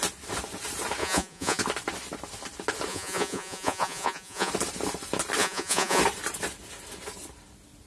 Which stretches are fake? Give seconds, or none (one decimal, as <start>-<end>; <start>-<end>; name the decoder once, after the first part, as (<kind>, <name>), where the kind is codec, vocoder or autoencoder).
1.0-1.6 (vocoder, Vocos); 2.9-4.5; 5.4-6.0